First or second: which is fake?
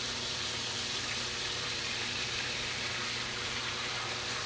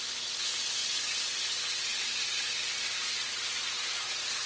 first